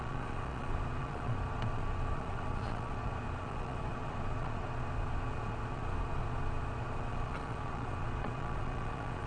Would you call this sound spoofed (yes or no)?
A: yes